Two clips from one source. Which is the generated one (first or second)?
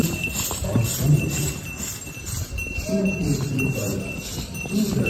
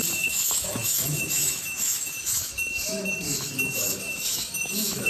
second